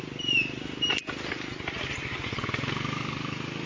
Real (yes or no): yes